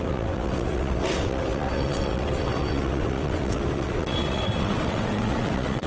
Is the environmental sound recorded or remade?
remade